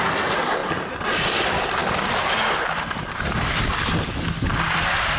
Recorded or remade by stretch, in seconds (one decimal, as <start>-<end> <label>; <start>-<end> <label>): 0.0-5.2 recorded

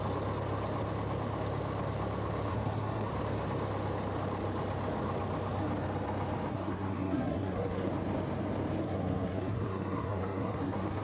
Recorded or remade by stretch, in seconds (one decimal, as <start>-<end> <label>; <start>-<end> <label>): 0.0-2.5 recorded; 2.5-3.1 remade; 3.1-6.5 recorded; 6.5-7.9 remade; 7.9-8.8 recorded; 8.8-11.0 remade

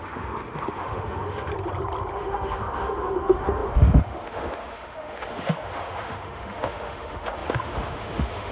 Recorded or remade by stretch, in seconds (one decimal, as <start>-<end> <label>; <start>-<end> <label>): 0.0-1.5 remade; 1.5-2.1 recorded; 2.1-8.5 remade

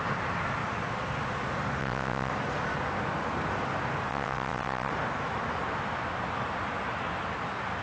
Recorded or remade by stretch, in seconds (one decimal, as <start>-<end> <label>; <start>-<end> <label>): 0.0-1.8 recorded; 1.8-2.3 remade; 2.3-4.1 recorded; 4.1-4.9 remade; 4.9-7.8 recorded

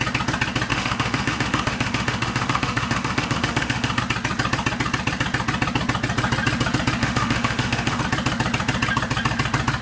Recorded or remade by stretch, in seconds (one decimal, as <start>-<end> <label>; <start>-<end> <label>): 0.0-0.7 recorded; 0.7-4.0 remade; 4.0-7.0 recorded; 7.0-8.0 remade; 8.0-9.8 recorded

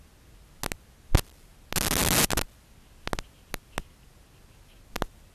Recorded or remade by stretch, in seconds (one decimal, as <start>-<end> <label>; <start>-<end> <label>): 0.0-5.3 recorded

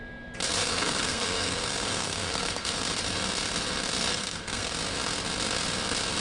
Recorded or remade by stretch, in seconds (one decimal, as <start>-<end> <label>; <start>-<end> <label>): 0.0-0.6 recorded; 0.6-2.7 remade; 2.7-4.1 recorded; 4.1-4.7 remade; 4.7-6.2 recorded

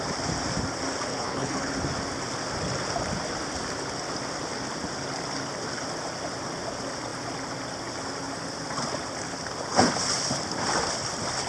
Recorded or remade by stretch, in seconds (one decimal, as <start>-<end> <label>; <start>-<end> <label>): 0.0-1.1 recorded; 1.1-1.7 remade; 1.7-11.5 recorded